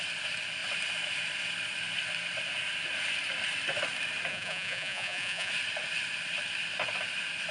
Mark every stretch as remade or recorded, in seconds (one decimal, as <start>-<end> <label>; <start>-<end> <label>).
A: 0.0-4.3 recorded; 4.3-5.5 remade; 5.5-7.5 recorded